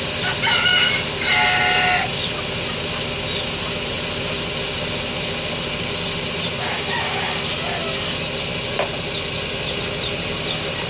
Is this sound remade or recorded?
recorded